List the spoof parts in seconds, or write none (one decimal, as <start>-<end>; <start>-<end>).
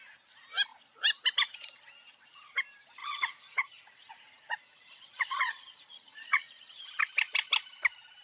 3.0-7.0